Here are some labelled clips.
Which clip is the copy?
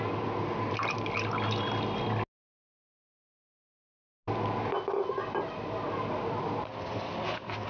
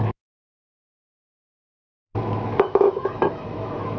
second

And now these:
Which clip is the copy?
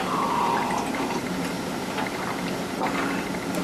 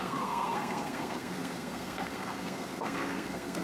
second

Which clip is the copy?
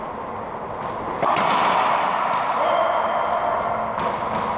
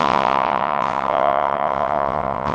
second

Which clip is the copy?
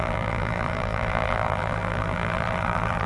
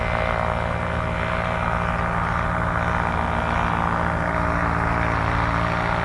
first